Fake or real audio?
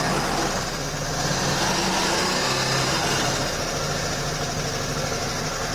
real